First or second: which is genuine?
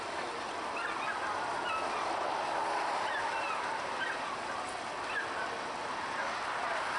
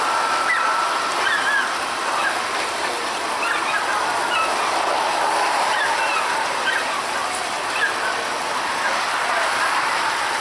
first